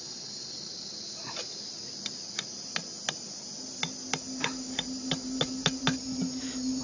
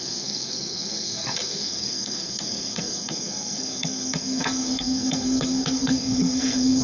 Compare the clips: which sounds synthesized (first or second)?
second